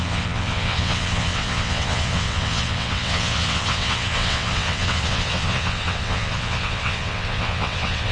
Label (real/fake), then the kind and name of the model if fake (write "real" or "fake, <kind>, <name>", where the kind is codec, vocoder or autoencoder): fake, vocoder, WaveNeXt